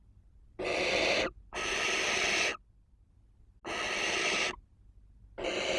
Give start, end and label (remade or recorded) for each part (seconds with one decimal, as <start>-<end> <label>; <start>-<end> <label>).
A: 0.0-5.8 recorded